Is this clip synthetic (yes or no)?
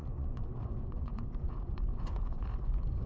yes